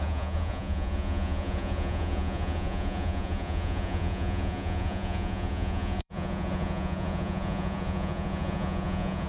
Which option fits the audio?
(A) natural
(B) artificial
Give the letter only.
B